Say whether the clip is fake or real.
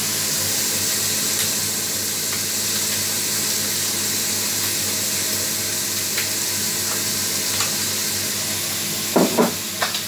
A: real